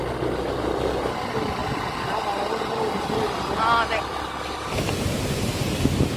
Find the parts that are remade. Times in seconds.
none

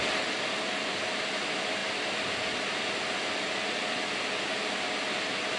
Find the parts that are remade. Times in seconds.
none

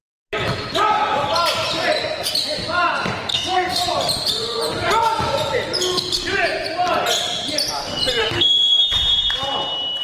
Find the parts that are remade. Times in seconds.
3.3-3.8 (codec, SNAC); 8.2-8.8